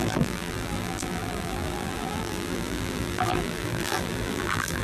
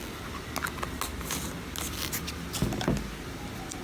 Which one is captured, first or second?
second